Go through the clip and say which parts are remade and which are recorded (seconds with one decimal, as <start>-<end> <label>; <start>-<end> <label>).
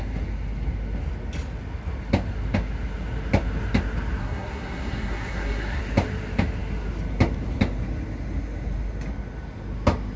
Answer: 0.0-4.2 recorded; 4.2-5.8 remade; 5.8-10.2 recorded